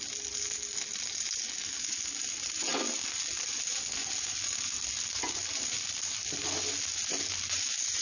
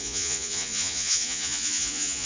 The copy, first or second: second